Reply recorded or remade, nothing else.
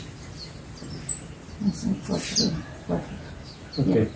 recorded